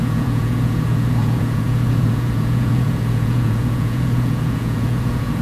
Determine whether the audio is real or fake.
fake